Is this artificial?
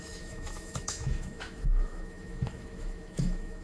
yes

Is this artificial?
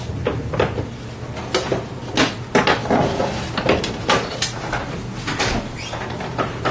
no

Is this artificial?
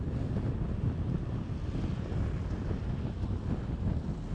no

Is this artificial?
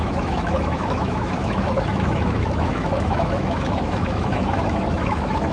yes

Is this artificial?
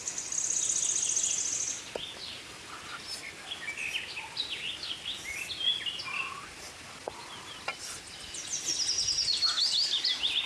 no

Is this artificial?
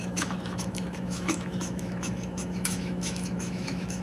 yes